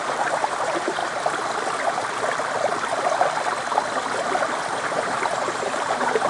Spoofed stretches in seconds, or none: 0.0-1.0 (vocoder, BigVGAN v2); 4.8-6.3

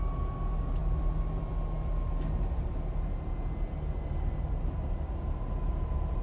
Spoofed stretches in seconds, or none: none

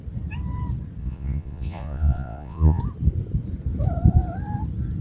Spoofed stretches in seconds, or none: 1.0-2.8 (vocoder, Vocos)

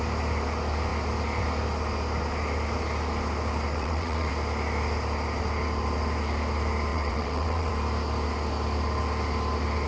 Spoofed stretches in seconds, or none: 3.7-4.3 (vocoder, WaveNeXt); 6.9-7.7

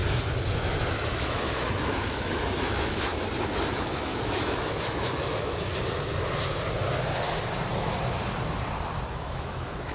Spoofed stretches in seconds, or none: 0.6-3.1 (autoencoder, DAC-VAE); 3.7-5.7; 9.1-9.9

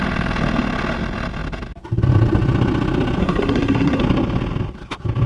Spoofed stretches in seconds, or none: 3.2-4.0 (codec, SNAC)

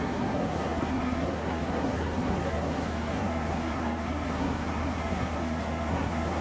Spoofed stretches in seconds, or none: 0.0-6.4 (codec, SNAC)

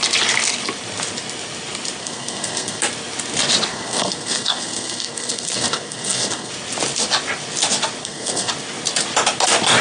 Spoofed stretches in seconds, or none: 2.0-2.8 (codec, SNAC); 3.7-6.5; 8.0-8.5